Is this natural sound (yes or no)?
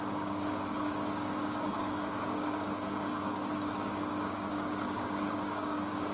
no